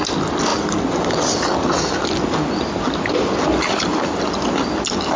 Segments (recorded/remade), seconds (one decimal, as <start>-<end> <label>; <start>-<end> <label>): 0.0-5.2 recorded